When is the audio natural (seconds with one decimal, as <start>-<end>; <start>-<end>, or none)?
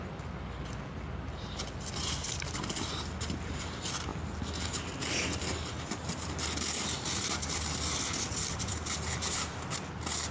0.0-10.3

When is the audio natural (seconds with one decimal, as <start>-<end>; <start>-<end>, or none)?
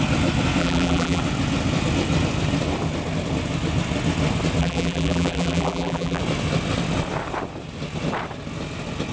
0.0-0.6; 1.2-4.6; 6.2-9.1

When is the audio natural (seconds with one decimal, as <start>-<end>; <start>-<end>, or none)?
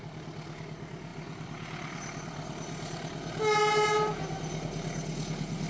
0.0-1.1; 3.4-5.7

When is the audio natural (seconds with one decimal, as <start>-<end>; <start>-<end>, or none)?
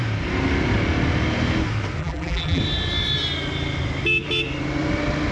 0.0-2.0; 2.6-5.3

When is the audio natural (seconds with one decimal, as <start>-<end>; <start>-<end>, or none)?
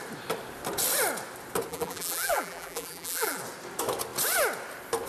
0.0-1.7; 3.4-5.1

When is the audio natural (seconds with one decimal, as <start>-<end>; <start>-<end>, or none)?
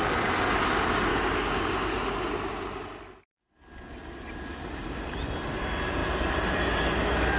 0.0-6.0; 6.8-7.4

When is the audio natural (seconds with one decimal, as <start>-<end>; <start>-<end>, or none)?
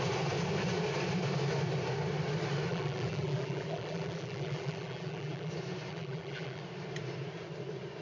0.0-2.7; 5.5-5.9; 6.6-8.0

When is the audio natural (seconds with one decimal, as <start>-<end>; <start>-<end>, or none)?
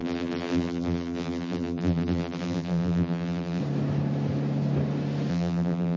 3.6-5.3